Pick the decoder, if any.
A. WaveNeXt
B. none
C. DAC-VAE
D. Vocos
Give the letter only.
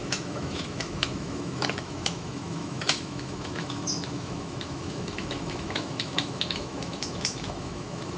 C